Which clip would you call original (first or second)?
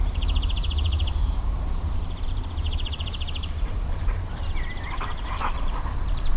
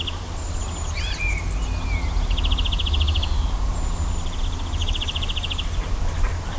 second